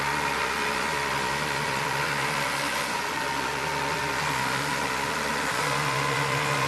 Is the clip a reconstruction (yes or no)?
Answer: yes